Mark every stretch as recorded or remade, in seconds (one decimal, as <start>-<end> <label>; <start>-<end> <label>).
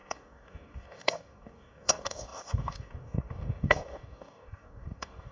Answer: 0.0-5.3 remade